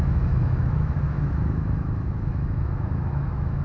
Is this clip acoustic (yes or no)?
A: no